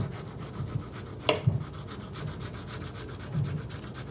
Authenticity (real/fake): real